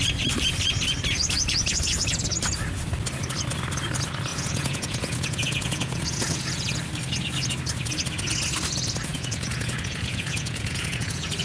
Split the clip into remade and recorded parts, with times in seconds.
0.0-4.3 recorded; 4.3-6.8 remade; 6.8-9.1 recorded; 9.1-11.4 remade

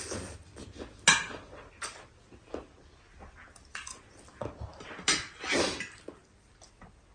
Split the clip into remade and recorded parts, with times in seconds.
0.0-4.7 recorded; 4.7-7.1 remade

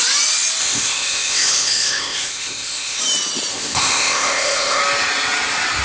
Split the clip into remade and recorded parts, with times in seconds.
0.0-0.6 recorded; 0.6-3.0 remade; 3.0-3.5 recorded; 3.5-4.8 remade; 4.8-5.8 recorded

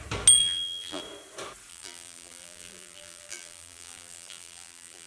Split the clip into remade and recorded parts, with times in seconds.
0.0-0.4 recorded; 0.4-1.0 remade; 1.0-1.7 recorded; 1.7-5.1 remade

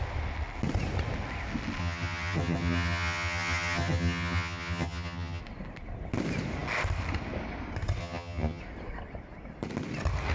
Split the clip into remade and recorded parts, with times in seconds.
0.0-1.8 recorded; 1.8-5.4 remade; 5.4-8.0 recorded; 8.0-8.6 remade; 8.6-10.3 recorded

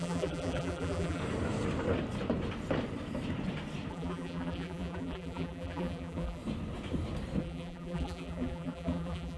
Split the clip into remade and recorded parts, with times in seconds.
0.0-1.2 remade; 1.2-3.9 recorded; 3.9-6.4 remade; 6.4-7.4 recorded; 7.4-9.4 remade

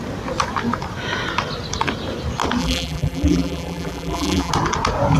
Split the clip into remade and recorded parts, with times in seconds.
0.0-2.6 recorded; 2.6-4.5 remade; 4.5-5.2 recorded